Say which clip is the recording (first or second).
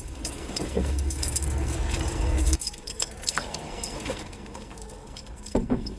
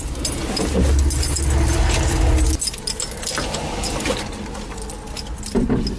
second